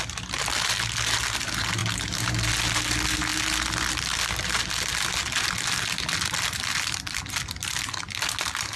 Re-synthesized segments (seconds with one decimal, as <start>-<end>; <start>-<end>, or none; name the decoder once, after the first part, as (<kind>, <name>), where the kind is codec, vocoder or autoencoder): none